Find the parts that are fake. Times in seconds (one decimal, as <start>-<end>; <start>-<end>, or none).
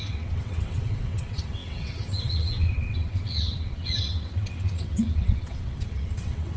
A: 0.0-6.6